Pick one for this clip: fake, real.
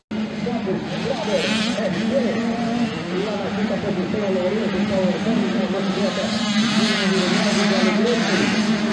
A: real